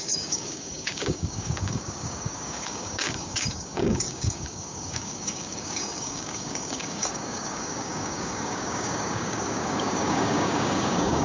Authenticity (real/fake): fake